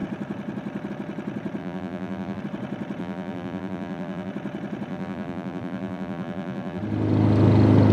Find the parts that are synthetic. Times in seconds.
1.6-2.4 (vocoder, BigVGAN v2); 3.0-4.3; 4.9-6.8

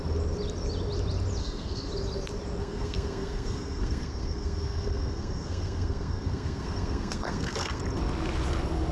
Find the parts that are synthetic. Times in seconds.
1.4-1.9 (codec, SNAC); 2.6-7.8

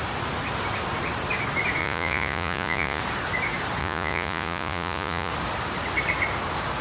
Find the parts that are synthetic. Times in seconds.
1.8-3.0 (vocoder, Vocos); 3.8-5.3

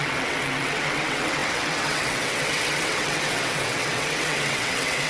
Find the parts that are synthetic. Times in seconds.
0.0-5.1 (vocoder, WaveNeXt)

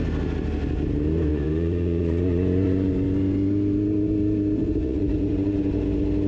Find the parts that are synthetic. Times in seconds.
1.3-2.9 (vocoder, Vocos); 4.6-5.6

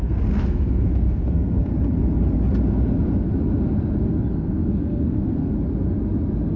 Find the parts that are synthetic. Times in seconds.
0.0-1.7 (codec, SNAC); 4.3-5.5